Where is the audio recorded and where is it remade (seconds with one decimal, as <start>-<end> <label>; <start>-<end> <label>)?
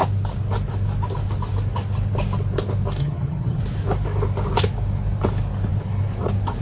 0.0-3.0 recorded; 3.0-3.6 remade; 3.6-6.6 recorded